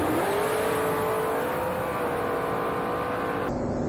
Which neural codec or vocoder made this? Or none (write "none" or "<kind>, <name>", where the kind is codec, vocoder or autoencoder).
none